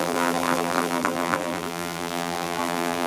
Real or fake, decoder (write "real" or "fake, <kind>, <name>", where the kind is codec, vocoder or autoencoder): fake, vocoder, BigVGAN v2